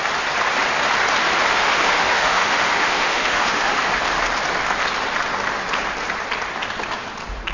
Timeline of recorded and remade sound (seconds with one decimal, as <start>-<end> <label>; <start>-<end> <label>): 0.0-1.5 recorded; 1.5-3.9 remade; 3.9-7.5 recorded